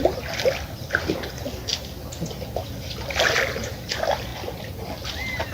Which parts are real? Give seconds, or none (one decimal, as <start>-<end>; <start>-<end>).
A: 0.0-5.5